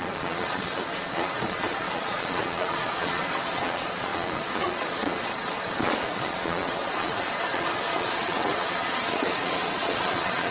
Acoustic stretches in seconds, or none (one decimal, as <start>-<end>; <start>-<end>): none